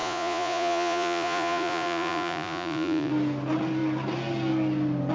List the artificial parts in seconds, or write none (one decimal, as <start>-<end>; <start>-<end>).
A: 0.0-3.1